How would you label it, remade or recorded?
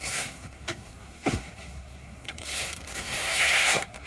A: remade